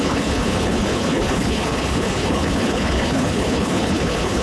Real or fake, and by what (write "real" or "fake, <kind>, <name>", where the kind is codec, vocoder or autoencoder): fake, codec, HILCodec